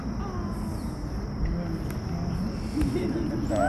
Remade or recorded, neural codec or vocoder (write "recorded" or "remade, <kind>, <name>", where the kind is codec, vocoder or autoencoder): recorded